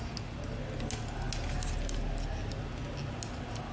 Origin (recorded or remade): recorded